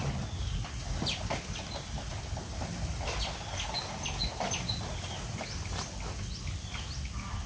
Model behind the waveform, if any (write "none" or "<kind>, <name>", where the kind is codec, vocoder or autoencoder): none